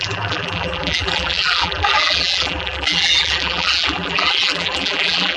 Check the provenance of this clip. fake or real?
fake